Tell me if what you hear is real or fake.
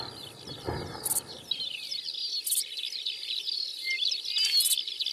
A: real